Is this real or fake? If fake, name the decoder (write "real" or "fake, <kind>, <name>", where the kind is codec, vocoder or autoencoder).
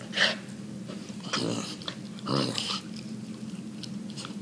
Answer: real